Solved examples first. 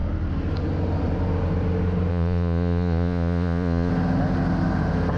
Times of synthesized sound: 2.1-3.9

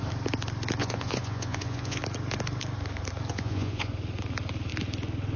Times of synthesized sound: 0.8-2.0; 3.3-3.9

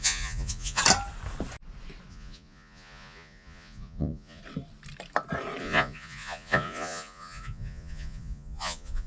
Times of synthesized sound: 0.0-0.8; 2.1-4.4; 5.6-9.1

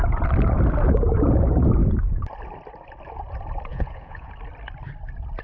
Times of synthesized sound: 3.7-4.3

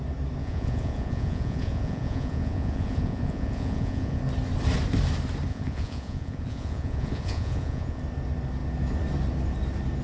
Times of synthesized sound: 0.4-4.2; 5.5-8.0